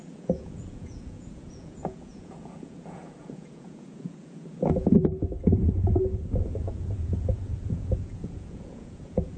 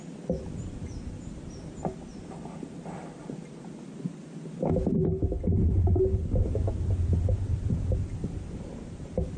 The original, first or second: second